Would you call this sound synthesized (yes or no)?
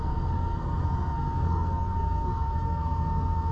yes